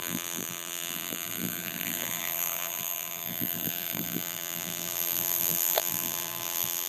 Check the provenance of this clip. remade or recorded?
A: remade